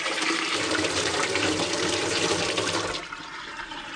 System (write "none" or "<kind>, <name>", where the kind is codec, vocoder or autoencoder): vocoder, BigVGAN v2